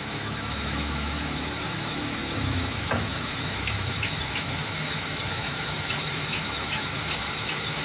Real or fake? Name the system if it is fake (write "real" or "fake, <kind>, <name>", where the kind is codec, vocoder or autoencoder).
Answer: fake, autoencoder, DAC-VAE